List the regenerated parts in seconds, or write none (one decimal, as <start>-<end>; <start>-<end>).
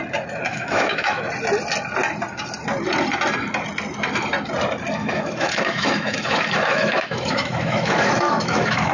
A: 0.5-1.2; 5.0-8.9